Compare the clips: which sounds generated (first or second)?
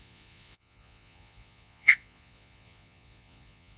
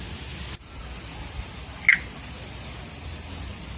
first